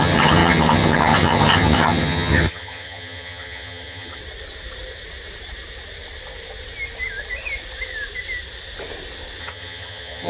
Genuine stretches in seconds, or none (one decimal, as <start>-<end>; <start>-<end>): 4.2-9.4

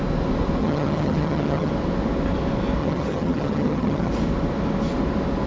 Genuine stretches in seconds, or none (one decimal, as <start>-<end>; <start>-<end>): 0.0-0.6; 1.7-2.8; 4.1-5.5

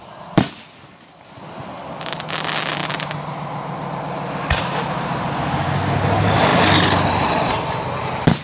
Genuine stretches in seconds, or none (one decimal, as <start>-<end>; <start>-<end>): 0.0-8.4

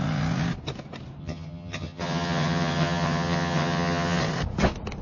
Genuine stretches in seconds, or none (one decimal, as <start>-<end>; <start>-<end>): 0.0-1.2; 4.2-5.0

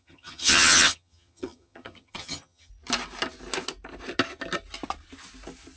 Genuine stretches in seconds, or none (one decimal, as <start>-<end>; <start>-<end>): 2.7-5.8

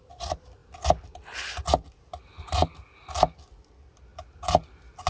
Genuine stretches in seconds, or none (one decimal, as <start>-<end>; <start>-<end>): 0.0-5.1

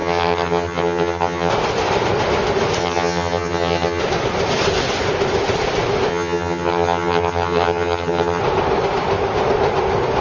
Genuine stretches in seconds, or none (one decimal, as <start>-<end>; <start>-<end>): 1.5-2.8; 4.0-6.1; 8.4-10.2